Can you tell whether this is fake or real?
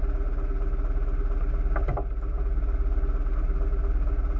real